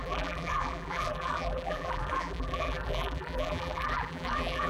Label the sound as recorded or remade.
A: remade